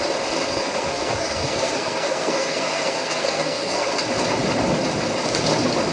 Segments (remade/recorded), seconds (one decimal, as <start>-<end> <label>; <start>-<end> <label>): 0.0-0.5 recorded; 0.5-4.0 remade; 4.0-5.9 recorded